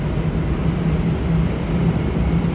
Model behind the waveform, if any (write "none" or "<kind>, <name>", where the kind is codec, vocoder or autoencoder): none